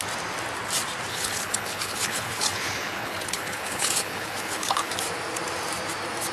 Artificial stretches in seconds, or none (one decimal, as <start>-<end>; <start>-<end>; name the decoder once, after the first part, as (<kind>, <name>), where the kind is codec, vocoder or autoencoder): 1.1-4.9 (codec, HILCodec)